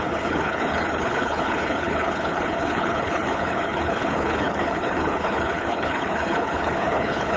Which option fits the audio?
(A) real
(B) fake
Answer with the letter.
B